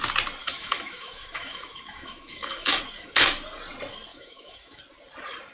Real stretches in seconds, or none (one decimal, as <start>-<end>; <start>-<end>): 0.0-0.4; 2.8-4.1; 4.8-5.5